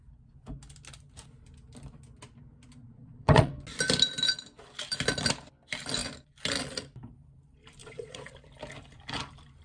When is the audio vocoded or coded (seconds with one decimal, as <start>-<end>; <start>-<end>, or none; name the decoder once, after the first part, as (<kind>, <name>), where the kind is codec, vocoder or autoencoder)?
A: 2.8-3.5 (vocoder, Vocos); 7.8-8.3